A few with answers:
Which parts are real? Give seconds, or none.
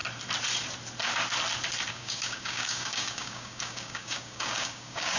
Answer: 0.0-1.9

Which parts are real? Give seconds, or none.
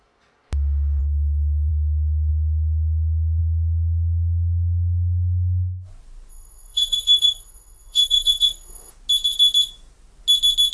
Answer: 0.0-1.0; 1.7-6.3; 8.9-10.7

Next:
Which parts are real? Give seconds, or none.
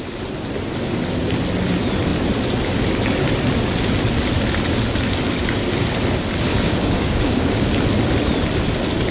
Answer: 0.0-6.5; 7.7-9.1